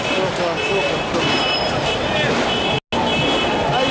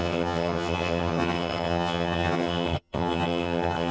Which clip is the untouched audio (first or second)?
first